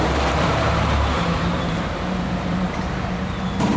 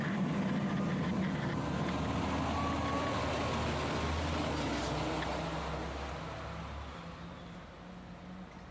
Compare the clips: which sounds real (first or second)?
second